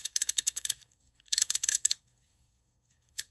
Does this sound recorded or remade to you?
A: remade